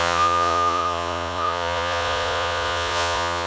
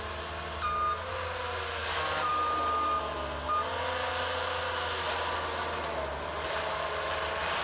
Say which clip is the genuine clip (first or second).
second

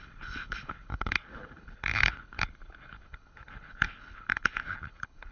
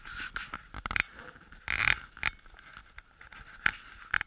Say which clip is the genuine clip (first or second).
second